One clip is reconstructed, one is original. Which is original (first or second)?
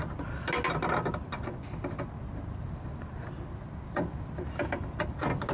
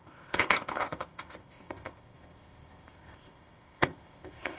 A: first